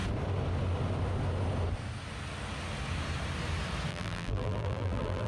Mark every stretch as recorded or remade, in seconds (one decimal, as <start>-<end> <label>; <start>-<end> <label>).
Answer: 0.0-3.9 recorded; 3.9-5.3 remade